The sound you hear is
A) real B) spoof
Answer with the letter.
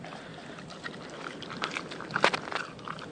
A